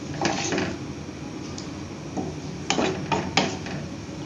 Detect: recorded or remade recorded